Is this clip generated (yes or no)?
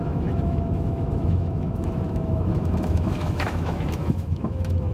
yes